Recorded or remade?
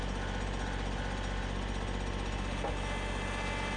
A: recorded